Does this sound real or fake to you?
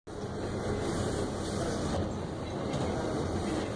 real